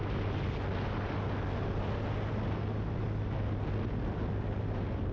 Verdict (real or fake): real